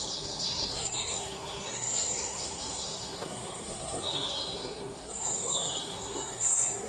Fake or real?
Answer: fake